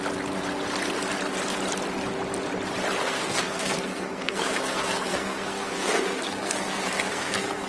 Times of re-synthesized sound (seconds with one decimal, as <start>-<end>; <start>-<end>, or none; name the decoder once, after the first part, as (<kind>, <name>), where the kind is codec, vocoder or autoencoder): 3.0-7.7 (codec, SNAC)